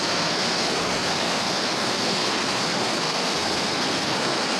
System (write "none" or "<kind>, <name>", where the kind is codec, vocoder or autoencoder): codec, SNAC